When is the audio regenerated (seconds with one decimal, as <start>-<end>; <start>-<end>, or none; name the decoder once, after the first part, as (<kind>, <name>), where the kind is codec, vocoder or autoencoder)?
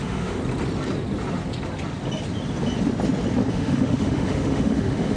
0.0-0.4 (autoencoder, DAC-VAE); 3.5-5.2